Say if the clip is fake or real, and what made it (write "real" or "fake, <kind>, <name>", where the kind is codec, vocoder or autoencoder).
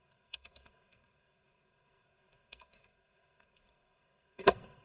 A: fake, codec, SNAC